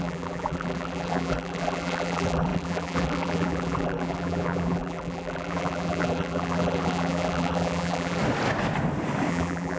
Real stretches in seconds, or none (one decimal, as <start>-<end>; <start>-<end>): 8.2-9.3